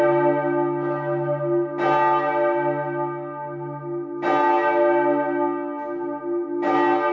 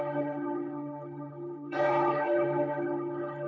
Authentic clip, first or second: first